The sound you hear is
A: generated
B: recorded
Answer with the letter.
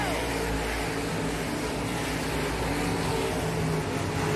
B